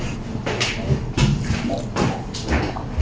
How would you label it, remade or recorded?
recorded